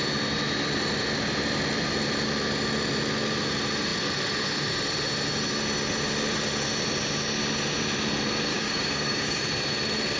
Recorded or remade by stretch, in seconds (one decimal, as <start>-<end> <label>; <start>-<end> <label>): 0.0-8.5 recorded; 8.5-9.4 remade; 9.4-10.2 recorded